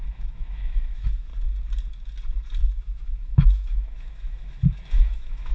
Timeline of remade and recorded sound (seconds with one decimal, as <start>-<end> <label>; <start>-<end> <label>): 0.0-1.3 remade; 1.3-2.6 recorded; 2.6-5.5 remade